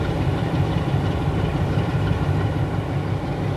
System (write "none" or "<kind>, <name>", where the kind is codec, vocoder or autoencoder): vocoder, BigVGAN v2